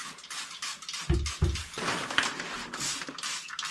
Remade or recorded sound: recorded